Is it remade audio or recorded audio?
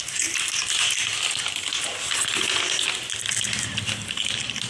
remade